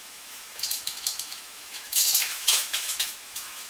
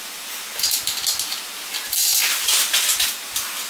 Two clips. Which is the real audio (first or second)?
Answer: second